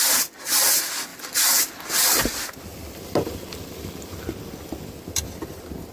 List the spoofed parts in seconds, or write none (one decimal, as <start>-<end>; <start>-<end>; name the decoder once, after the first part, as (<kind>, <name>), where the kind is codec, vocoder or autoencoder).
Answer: none